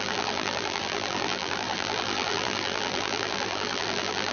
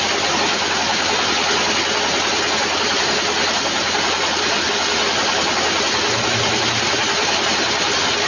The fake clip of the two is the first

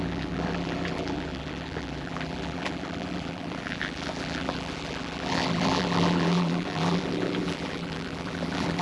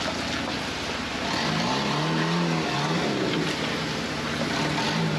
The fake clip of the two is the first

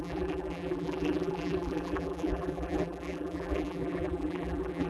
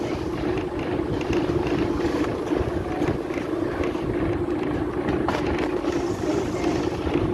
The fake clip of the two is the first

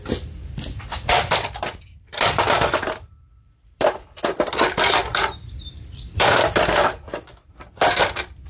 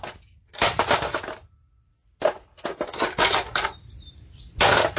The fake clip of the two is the first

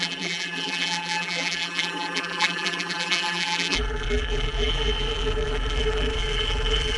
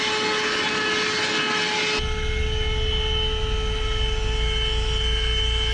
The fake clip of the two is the first